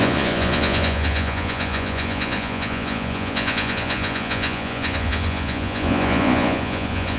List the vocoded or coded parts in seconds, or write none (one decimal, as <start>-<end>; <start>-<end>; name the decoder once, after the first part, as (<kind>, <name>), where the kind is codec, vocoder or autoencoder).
0.0-7.2 (vocoder, Vocos)